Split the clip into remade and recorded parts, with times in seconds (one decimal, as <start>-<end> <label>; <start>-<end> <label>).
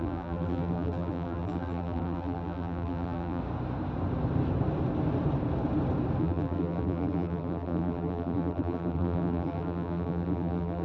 0.0-3.4 remade; 3.4-6.2 recorded; 6.2-10.8 remade